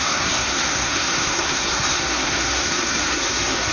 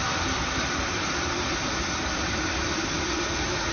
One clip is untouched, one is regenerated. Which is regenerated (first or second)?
first